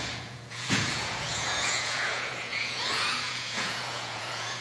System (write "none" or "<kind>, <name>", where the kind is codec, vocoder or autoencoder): vocoder, Vocos